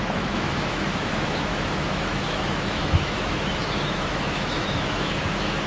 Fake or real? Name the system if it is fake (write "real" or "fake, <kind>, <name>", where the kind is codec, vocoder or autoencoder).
fake, autoencoder, DAC-VAE